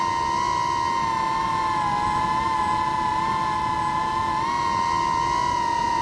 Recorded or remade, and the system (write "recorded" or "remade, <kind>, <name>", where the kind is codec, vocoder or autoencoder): recorded